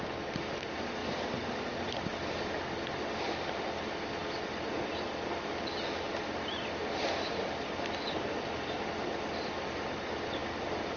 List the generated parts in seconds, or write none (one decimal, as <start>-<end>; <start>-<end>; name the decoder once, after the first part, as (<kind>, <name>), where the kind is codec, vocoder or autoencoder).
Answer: 1.0-2.3 (vocoder, BigVGAN v2)

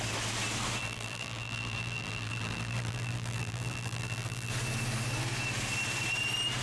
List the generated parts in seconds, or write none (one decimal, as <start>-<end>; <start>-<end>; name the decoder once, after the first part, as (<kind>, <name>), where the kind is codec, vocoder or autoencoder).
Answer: 0.8-4.5 (vocoder, BigVGAN v2)

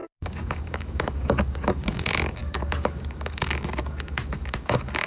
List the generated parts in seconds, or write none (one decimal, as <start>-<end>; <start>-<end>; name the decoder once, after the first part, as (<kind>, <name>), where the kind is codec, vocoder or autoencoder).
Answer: 0.0-5.1 (codec, DAC)